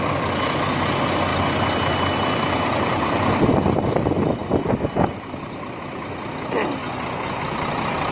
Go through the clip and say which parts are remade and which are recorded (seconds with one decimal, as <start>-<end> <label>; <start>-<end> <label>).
0.0-6.8 recorded; 6.8-7.4 remade; 7.4-8.1 recorded